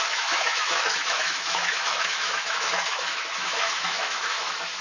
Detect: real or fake fake